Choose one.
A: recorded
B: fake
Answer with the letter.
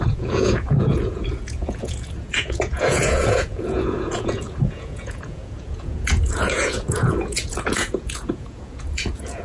B